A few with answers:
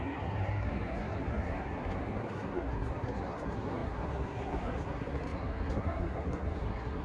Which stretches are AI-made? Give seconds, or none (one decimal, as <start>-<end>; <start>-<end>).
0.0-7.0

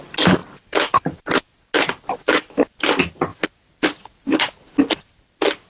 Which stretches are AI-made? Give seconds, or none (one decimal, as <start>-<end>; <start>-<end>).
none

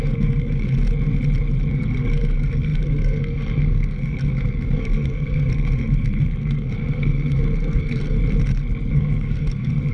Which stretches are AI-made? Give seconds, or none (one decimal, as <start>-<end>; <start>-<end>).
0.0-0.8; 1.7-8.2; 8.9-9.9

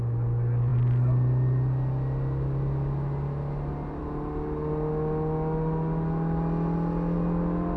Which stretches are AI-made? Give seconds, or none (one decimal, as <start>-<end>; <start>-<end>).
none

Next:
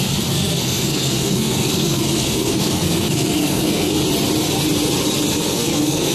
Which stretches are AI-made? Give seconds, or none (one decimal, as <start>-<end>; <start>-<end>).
0.0-4.0; 5.3-6.1

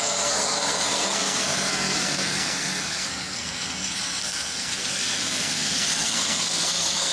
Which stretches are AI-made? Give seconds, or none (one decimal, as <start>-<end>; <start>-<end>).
0.0-7.1